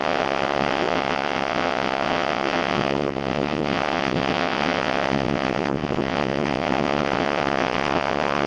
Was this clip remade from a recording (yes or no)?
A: yes